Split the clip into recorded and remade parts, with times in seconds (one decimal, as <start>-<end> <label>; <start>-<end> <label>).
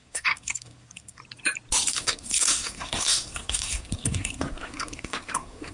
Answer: 0.0-1.2 remade; 1.2-1.9 recorded; 1.9-5.7 remade